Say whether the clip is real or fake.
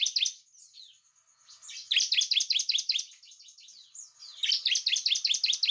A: real